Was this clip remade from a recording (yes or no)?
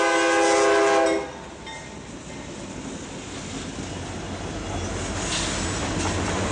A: no